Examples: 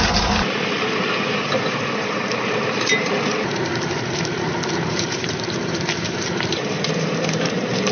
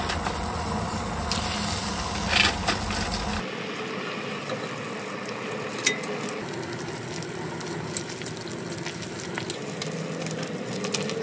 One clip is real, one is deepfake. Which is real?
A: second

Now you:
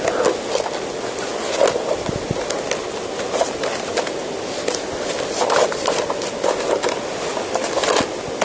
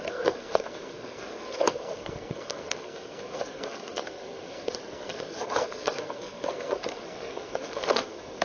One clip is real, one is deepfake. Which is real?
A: first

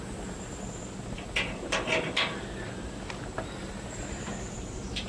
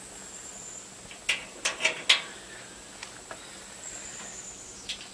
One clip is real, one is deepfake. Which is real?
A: second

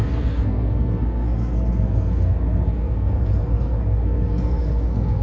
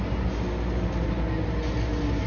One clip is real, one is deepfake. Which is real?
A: second